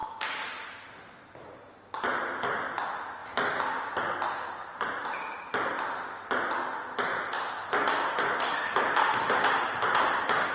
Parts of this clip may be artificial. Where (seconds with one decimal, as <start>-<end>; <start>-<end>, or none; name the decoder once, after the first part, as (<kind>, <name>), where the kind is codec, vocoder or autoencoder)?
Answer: none